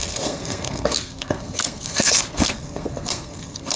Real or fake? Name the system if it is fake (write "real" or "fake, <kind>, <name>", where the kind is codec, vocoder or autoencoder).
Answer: fake, codec, SNAC